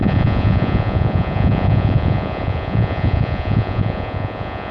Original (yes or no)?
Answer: no